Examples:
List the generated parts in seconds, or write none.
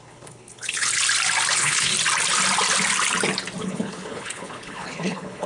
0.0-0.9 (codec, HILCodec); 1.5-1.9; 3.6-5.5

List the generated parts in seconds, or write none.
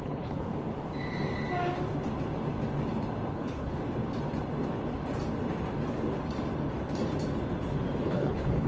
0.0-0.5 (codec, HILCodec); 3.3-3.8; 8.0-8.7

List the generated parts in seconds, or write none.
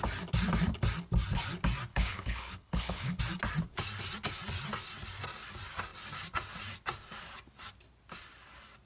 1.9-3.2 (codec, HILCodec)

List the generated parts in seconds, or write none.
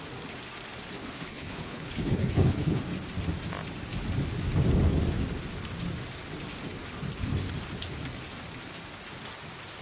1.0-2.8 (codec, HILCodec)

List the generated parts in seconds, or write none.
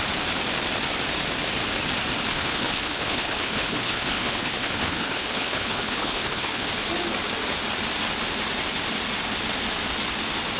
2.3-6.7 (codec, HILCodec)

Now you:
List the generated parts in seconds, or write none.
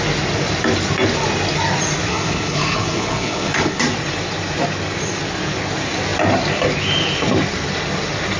2.1-3.8 (codec, HILCodec)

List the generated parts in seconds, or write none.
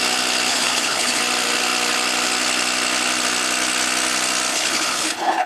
0.5-1.2 (codec, HILCodec); 4.5-5.5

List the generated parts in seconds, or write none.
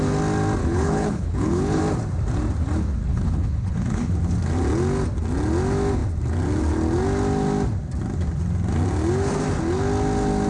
0.6-1.8 (codec, HILCodec); 3.1-4.1